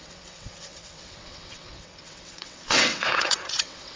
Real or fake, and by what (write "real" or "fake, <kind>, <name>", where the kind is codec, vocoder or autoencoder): fake, vocoder, WaveNeXt